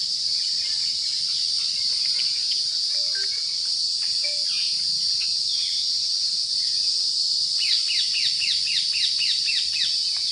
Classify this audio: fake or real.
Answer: real